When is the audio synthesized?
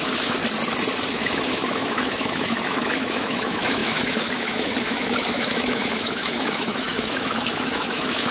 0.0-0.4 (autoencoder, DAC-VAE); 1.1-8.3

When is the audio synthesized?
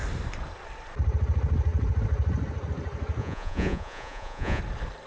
3.2-4.6 (vocoder, Vocos)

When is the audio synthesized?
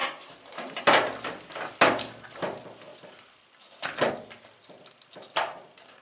0.0-0.8 (vocoder, BigVGAN v2); 2.9-4.1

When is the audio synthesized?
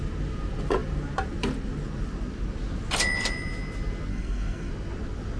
4.1-4.7 (codec, SNAC)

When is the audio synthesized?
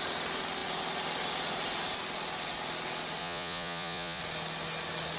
3.2-4.2 (vocoder, Vocos)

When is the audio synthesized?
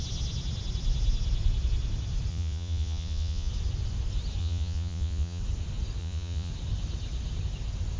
2.3-3.5 (vocoder, Vocos); 4.4-5.4; 6.0-6.5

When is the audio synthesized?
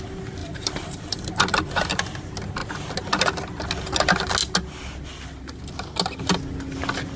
0.4-1.9 (vocoder, BigVGAN v2)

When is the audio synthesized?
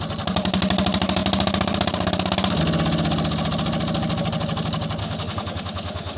5.0-6.2 (autoencoder, DAC-VAE)